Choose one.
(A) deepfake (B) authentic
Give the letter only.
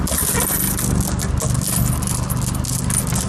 B